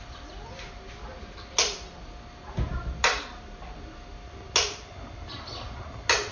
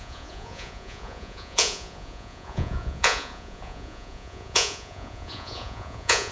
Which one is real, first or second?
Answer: first